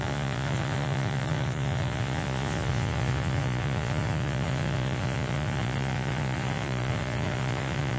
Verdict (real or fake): fake